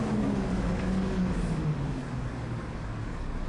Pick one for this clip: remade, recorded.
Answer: remade